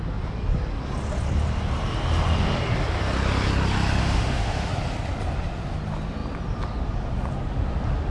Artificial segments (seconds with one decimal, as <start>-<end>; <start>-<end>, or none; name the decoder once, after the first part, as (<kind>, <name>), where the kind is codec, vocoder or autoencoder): 4.0-4.7 (autoencoder, DAC-VAE)